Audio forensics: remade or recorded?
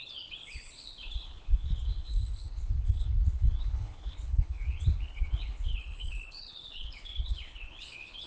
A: remade